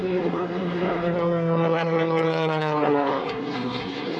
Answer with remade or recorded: remade